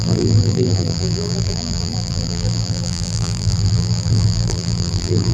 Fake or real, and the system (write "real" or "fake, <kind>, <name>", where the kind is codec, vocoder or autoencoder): fake, vocoder, BigVGAN v2